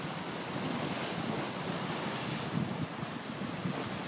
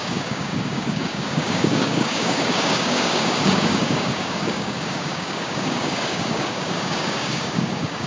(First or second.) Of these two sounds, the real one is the first